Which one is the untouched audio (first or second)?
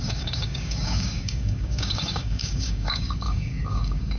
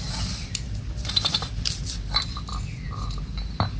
second